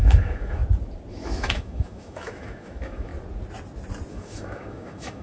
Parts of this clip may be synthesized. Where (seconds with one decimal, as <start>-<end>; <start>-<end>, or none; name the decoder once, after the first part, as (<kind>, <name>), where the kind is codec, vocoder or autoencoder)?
0.0-0.6 (autoencoder, DAC-VAE); 1.1-3.1; 4.1-5.2